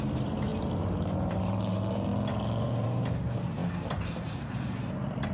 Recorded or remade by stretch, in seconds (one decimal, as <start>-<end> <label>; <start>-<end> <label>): 0.0-2.1 remade; 2.1-2.6 recorded; 2.6-3.6 remade; 3.6-5.3 recorded